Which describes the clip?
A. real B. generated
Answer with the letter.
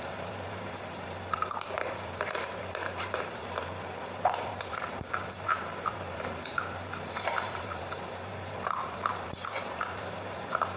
B